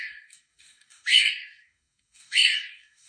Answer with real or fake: fake